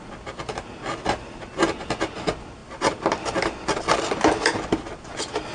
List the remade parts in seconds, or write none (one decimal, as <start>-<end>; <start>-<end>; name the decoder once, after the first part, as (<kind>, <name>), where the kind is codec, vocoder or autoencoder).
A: none

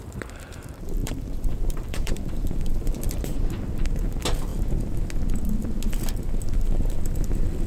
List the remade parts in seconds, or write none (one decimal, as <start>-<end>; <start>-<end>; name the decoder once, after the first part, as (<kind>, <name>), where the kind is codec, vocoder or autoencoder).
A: 0.0-4.5 (vocoder, BigVGAN v2)

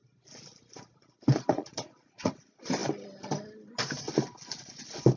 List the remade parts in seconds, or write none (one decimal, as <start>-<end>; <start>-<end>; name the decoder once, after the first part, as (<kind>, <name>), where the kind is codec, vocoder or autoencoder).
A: 1.5-2.3 (vocoder, Vocos)

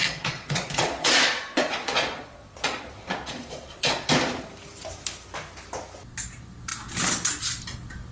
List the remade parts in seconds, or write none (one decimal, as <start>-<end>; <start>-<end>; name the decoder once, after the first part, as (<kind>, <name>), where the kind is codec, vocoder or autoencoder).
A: 0.0-4.1 (vocoder, Vocos)

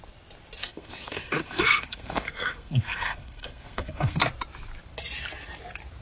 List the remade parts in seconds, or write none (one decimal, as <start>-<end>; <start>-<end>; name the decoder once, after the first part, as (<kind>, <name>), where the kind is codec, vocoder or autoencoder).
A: 0.6-4.2 (codec, SNAC)

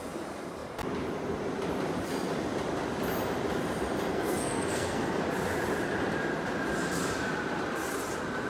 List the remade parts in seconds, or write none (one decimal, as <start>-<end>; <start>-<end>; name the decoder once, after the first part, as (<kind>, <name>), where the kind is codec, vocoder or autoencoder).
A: 4.1-5.2 (codec, SNAC)

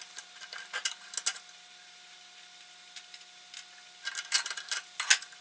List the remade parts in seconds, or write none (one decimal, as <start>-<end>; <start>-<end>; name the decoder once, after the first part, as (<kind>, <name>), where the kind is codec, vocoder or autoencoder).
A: none

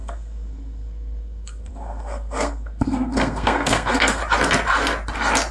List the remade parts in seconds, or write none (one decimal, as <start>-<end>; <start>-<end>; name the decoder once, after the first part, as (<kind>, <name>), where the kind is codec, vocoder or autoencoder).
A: 0.0-4.2 (codec, SNAC)